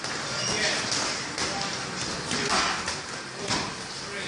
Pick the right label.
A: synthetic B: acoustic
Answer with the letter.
B